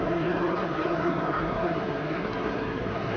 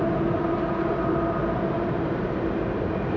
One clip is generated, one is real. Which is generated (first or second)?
first